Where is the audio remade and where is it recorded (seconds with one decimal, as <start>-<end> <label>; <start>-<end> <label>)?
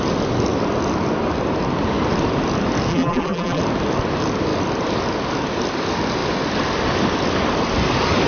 0.0-2.9 recorded; 2.9-3.6 remade; 3.6-8.3 recorded